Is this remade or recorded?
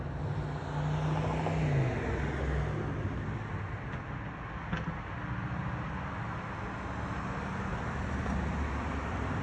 recorded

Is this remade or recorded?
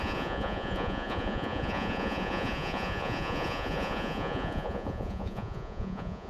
remade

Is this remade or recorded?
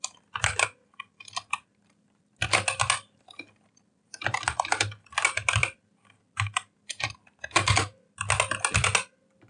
recorded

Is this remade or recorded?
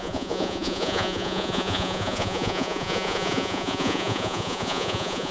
remade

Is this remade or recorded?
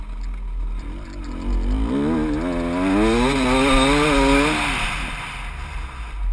recorded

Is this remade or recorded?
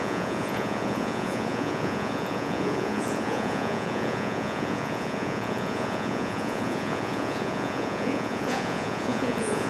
remade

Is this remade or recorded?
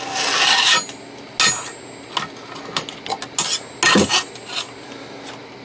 recorded